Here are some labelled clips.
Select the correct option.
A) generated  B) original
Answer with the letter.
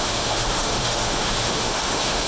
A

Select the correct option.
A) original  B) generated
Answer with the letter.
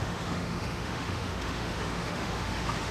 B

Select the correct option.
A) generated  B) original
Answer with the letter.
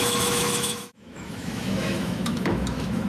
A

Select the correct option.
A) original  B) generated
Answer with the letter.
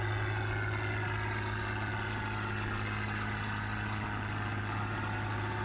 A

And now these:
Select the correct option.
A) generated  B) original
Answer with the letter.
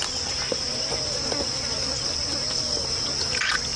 B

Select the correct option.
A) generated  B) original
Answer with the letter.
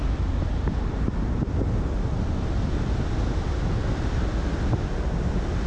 B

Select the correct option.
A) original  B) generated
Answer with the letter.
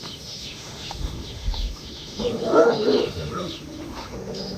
B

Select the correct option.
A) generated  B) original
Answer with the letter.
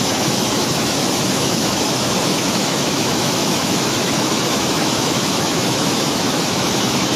A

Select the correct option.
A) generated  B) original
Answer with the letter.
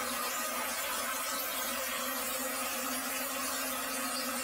B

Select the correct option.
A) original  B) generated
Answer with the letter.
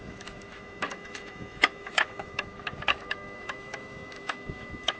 B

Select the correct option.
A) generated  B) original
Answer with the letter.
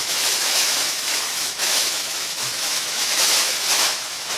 A